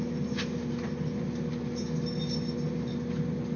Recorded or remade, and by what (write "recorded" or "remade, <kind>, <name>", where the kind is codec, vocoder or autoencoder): recorded